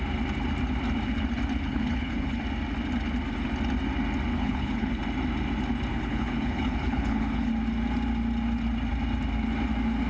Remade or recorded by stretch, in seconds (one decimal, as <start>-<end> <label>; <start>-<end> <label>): 0.0-1.7 recorded; 1.7-2.4 remade; 2.4-4.3 recorded; 4.3-5.0 remade; 5.0-5.9 recorded; 5.9-7.5 remade; 7.5-10.1 recorded